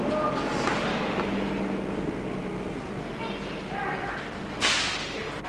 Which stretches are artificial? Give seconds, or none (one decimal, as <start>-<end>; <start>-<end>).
none